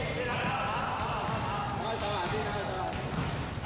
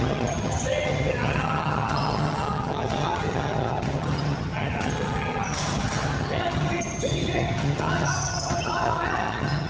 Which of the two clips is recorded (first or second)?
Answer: first